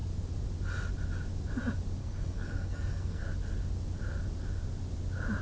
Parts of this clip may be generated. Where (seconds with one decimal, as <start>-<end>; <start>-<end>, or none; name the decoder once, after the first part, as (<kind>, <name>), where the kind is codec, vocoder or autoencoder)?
2.0-3.2 (codec, SNAC)